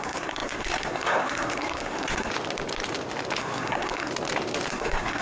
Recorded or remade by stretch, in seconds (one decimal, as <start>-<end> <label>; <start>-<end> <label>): 0.0-2.3 remade; 2.3-3.4 recorded; 3.4-4.1 remade; 4.1-4.7 recorded; 4.7-5.2 remade